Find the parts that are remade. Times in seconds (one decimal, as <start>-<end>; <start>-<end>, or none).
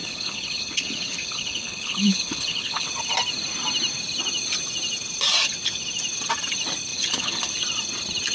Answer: 0.0-2.9; 6.9-7.5